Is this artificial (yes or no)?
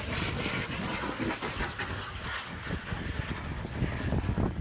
no